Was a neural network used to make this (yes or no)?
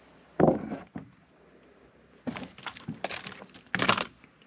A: no